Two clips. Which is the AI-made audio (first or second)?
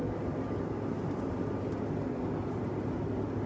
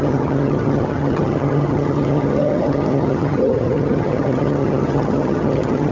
second